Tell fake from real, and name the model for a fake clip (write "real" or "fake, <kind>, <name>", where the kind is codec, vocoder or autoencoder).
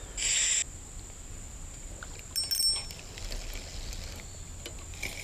real